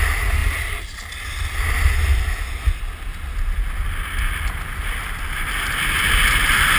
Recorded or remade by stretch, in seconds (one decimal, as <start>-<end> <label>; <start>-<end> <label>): 0.0-0.4 recorded; 0.4-1.7 remade; 1.7-6.8 recorded